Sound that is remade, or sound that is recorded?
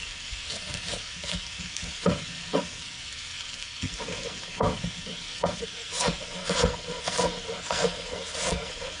remade